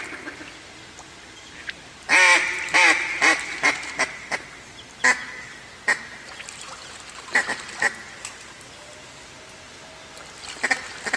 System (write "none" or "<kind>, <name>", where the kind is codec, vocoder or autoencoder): none